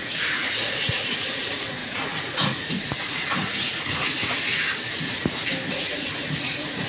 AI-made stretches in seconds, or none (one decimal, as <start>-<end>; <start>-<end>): 0.0-4.2; 5.7-6.9